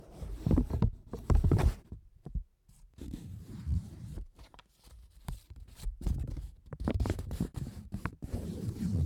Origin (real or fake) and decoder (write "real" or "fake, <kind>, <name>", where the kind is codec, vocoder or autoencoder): fake, vocoder, BigVGAN v2